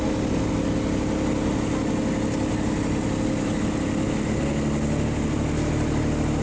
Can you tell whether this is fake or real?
real